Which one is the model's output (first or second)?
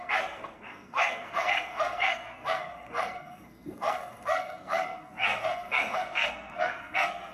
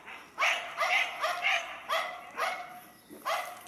first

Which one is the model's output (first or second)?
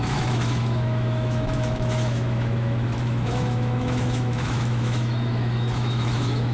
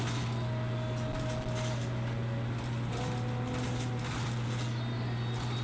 first